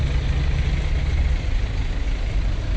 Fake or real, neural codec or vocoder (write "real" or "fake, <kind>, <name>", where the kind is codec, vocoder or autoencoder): real